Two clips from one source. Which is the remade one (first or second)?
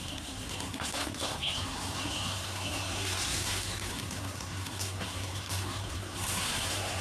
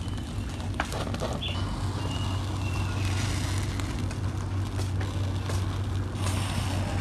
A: first